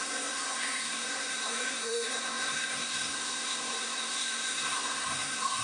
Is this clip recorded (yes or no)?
no